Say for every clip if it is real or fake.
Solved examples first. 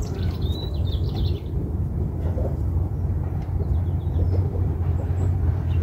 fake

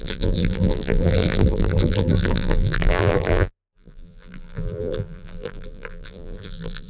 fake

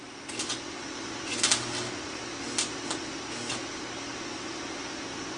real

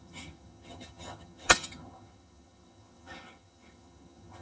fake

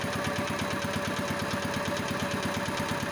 real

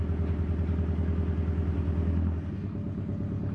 real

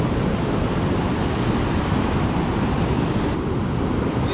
real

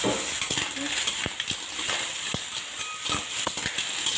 real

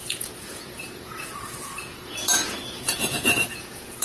fake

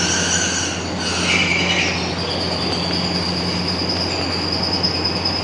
real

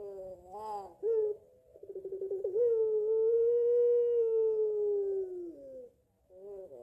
real